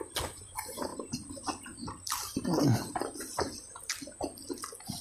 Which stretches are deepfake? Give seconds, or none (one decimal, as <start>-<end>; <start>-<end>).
none